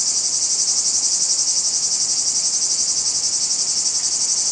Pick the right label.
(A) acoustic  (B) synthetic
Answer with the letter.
A